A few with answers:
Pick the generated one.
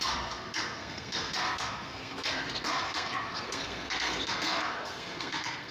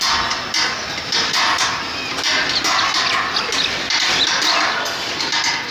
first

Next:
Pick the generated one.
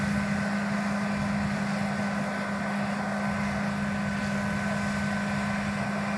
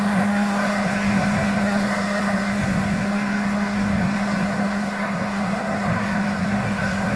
second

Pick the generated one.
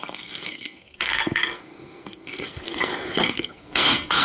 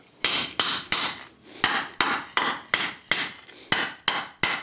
first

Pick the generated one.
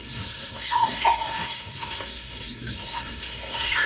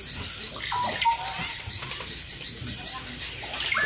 first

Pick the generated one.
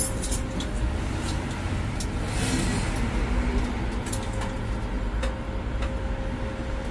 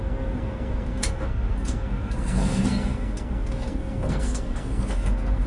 second